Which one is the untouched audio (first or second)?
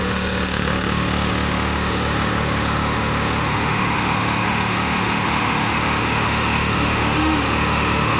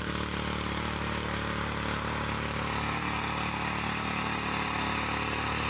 second